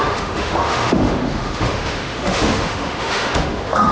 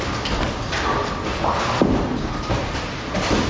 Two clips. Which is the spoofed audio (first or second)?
first